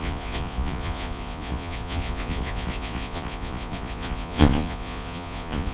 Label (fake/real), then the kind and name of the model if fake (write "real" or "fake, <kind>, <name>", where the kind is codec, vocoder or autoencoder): fake, vocoder, Vocos